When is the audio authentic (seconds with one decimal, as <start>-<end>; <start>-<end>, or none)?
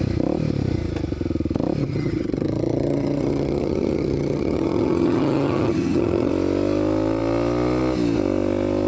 0.0-1.8; 6.3-8.9